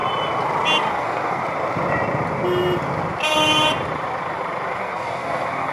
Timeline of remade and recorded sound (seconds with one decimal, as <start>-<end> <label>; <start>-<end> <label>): 0.0-0.9 recorded; 0.9-1.4 remade; 1.4-4.8 recorded; 4.8-5.7 remade

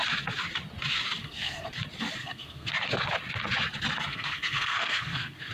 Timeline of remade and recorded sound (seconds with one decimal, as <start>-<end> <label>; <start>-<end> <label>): 0.0-1.2 recorded; 1.2-1.7 remade; 1.7-2.2 recorded; 2.2-2.7 remade; 2.7-4.1 recorded; 4.1-5.5 remade

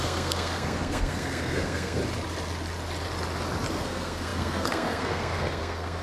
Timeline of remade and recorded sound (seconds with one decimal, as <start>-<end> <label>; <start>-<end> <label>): 0.0-2.0 remade; 2.0-3.7 recorded; 3.7-6.0 remade

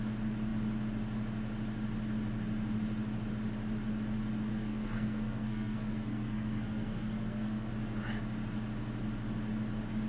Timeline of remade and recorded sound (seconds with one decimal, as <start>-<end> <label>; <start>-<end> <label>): 0.0-4.5 recorded; 4.5-7.7 remade; 7.7-10.1 recorded

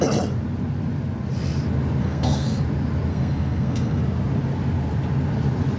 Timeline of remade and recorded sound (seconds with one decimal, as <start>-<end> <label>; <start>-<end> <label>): 0.0-2.0 recorded; 2.0-2.6 remade; 2.6-3.1 recorded; 3.1-4.0 remade; 4.0-5.8 recorded

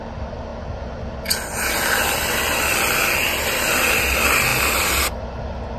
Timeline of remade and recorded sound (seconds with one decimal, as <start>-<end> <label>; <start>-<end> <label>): 0.0-5.8 recorded